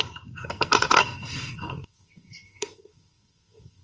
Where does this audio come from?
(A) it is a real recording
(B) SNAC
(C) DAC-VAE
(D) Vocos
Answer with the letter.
B